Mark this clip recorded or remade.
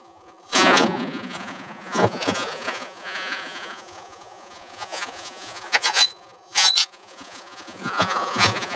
remade